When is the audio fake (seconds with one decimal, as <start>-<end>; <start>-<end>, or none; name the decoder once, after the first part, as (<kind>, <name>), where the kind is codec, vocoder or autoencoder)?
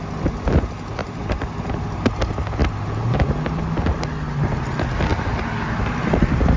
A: 1.0-2.1 (vocoder, BigVGAN v2)